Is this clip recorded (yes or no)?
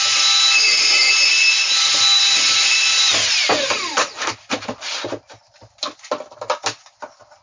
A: yes